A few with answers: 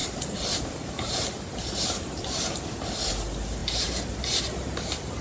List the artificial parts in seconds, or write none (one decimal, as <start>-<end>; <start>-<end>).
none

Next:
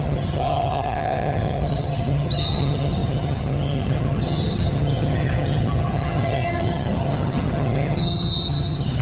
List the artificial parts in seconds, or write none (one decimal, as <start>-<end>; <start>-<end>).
0.0-9.0

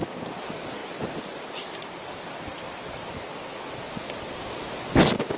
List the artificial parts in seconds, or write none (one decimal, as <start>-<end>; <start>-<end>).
none